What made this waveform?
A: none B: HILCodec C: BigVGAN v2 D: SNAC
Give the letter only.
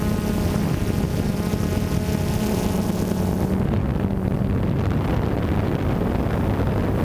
A